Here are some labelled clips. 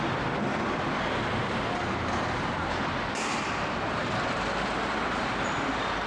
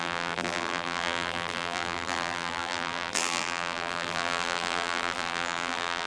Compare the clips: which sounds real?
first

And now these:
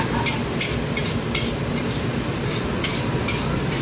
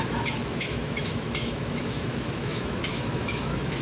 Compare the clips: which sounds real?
first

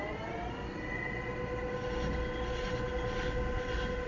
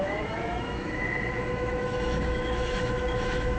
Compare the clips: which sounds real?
first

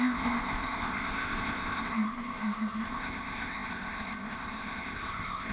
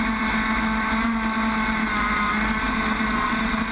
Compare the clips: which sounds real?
second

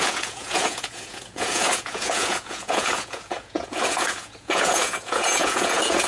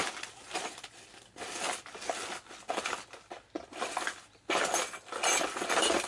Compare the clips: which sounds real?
second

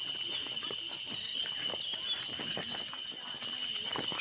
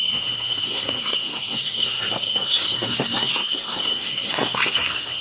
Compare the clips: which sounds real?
first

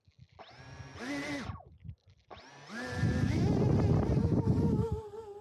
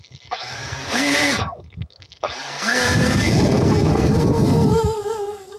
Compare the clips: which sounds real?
first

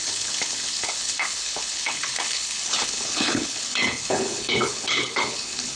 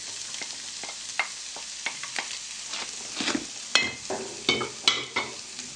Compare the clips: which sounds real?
second